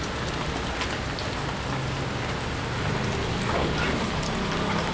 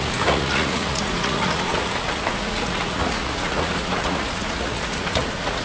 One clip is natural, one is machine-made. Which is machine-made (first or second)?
second